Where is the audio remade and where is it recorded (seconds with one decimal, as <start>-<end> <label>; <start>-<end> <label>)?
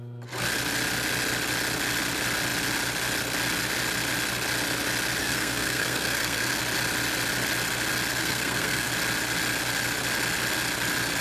0.0-5.2 recorded; 5.2-6.6 remade; 6.6-8.2 recorded; 8.2-8.9 remade; 8.9-11.2 recorded